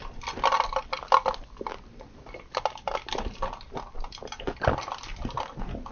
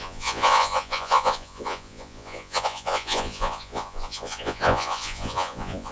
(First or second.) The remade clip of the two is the second